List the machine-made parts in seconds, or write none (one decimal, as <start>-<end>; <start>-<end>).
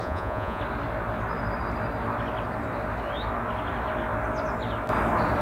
0.0-0.6